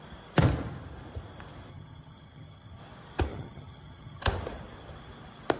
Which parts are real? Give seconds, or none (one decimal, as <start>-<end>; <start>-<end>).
0.0-1.7; 2.8-3.3; 4.2-5.6